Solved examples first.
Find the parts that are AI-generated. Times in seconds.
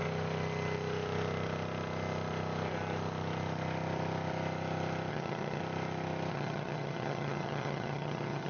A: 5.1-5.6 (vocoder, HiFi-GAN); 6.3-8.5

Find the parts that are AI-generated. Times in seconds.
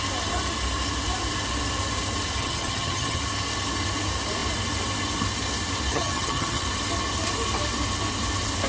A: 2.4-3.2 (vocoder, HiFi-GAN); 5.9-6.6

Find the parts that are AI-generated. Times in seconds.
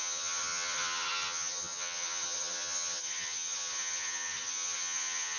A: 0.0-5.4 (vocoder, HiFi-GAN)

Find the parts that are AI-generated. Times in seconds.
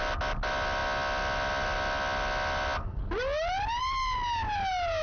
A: none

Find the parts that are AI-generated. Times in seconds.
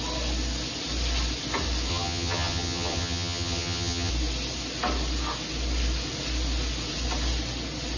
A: 1.9-4.1 (vocoder, HiFi-GAN)